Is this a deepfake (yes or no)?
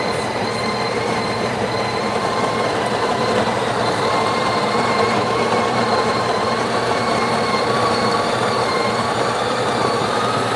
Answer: yes